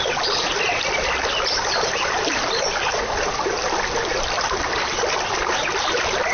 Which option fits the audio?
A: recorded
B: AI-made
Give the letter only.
A